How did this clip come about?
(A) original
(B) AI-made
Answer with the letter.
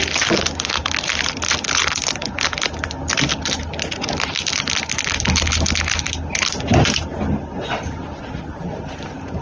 A